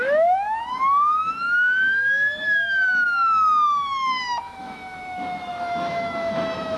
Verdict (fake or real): fake